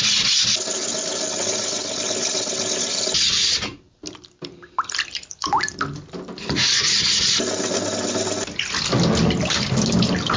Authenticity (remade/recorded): recorded